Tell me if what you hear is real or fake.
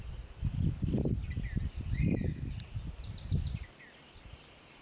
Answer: real